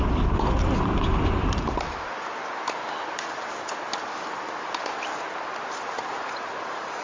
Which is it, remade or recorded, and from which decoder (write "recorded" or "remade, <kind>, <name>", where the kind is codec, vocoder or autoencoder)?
recorded